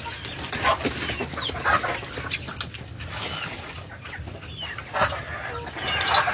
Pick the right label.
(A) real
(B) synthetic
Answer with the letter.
A